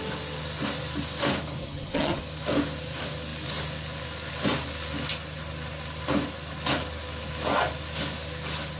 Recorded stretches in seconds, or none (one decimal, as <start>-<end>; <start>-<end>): 0.0-1.6; 2.2-8.8